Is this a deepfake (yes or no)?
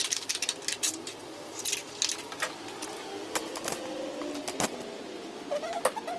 no